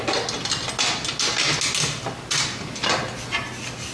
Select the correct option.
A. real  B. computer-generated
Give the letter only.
A